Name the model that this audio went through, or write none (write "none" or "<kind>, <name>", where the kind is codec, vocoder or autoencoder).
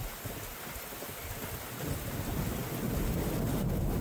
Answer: none